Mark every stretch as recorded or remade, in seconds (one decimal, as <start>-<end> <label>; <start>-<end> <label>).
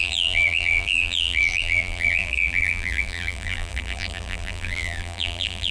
0.0-5.7 remade